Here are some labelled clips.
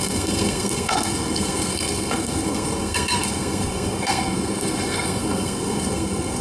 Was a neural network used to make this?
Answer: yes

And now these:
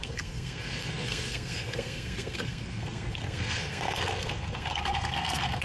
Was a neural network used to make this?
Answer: yes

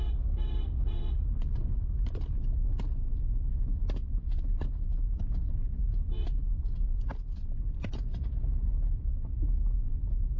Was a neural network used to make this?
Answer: no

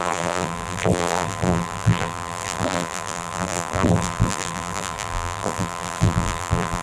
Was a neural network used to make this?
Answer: yes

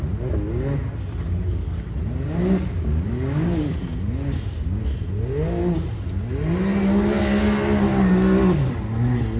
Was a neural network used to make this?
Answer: no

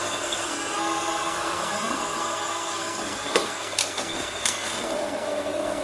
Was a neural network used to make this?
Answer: yes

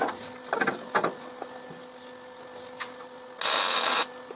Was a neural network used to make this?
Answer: no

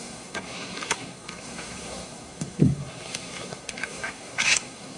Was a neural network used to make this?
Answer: yes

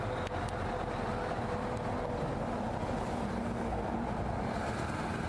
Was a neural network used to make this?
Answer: no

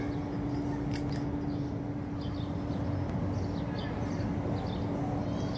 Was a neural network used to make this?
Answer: no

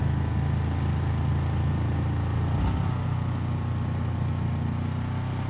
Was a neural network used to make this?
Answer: no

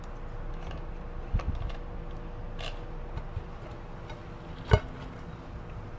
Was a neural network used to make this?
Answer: no